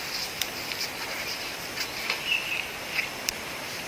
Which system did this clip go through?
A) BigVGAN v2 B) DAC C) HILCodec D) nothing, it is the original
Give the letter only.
A